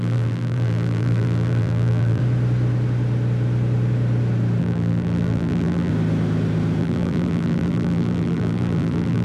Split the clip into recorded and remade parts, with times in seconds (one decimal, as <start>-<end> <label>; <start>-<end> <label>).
0.0-2.2 remade; 2.2-4.6 recorded; 4.6-5.9 remade; 5.9-6.8 recorded; 6.8-9.2 remade